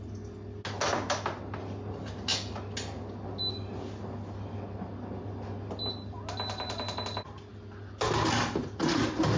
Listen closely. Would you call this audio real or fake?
real